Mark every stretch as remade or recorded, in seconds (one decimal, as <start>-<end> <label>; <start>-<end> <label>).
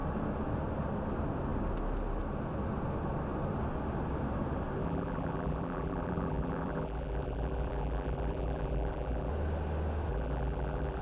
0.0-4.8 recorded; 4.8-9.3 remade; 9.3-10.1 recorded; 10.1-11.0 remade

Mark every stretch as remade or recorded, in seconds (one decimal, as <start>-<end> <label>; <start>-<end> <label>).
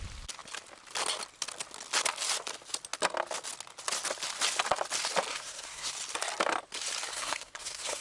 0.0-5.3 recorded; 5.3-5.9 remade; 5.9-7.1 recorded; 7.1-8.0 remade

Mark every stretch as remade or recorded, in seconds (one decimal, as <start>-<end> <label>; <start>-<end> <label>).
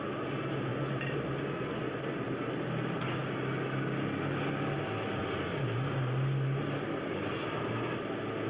0.0-0.7 recorded; 0.7-2.6 remade; 2.6-8.5 recorded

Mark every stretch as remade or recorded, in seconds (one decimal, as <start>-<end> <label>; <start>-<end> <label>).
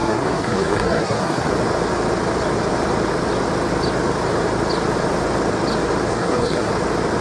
0.0-1.5 remade; 1.5-6.1 recorded; 6.1-6.7 remade; 6.7-7.2 recorded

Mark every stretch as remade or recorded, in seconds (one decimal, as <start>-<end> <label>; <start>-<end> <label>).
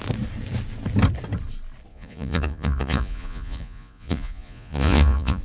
0.0-1.9 recorded; 1.9-5.4 remade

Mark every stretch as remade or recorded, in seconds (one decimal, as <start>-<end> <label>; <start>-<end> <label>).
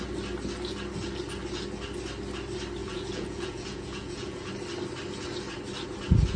0.0-2.8 recorded; 2.8-4.5 remade; 4.5-6.4 recorded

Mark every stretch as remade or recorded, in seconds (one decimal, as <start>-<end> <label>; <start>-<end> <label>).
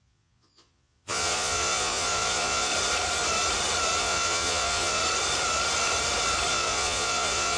0.0-2.7 remade; 2.7-4.0 recorded; 4.0-5.0 remade; 5.0-6.5 recorded; 6.5-7.6 remade